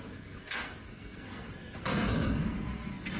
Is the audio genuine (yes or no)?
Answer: no